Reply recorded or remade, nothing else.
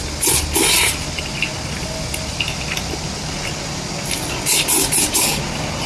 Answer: recorded